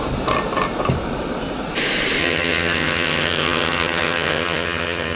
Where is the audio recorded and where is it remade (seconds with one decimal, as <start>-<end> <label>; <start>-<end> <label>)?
0.0-2.2 recorded; 2.2-5.2 remade